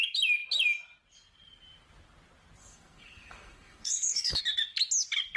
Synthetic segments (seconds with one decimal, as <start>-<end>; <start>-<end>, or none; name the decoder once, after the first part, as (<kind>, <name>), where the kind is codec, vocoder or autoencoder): 2.6-4.4 (codec, SNAC)